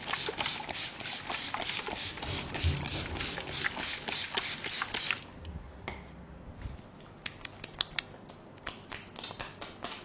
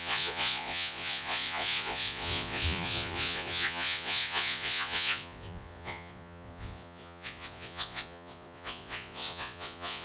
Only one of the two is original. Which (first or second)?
first